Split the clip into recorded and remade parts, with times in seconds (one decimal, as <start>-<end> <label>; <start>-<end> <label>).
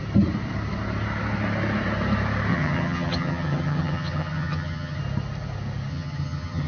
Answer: 0.0-2.5 recorded; 2.5-5.0 remade; 5.0-5.9 recorded; 5.9-6.7 remade